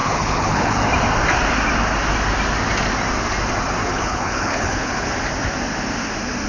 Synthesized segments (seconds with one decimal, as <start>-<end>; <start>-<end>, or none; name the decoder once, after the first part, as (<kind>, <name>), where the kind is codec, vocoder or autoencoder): 0.0-0.8 (codec, HILCodec); 3.8-5.1